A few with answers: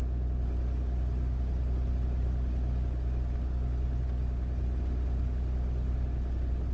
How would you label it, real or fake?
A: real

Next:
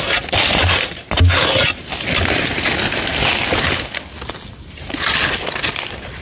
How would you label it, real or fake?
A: real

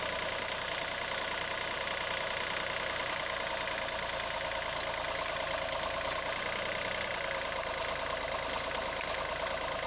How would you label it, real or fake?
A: real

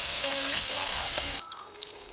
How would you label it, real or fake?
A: fake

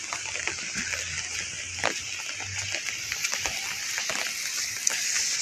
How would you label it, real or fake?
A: real